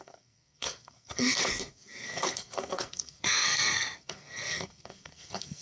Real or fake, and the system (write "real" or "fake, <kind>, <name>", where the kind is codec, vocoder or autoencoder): fake, codec, SNAC